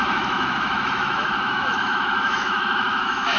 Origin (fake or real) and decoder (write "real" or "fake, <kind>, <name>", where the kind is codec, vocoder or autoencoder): fake, autoencoder, DAC-VAE